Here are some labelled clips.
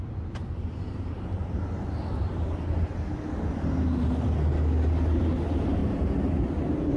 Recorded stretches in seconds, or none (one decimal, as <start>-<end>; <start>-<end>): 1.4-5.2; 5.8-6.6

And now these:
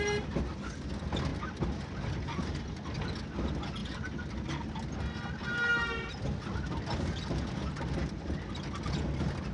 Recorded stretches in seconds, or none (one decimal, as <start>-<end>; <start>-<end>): 0.0-3.8; 4.7-9.5

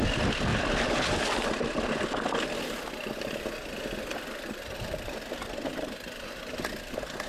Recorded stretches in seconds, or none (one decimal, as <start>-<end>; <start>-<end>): 0.0-7.3